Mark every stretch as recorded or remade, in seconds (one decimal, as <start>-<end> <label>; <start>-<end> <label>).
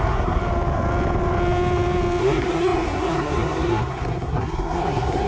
0.0-0.4 remade; 0.4-2.2 recorded; 2.2-5.3 remade